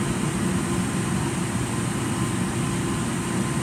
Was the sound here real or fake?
real